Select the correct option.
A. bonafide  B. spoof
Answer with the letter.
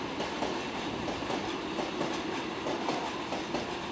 A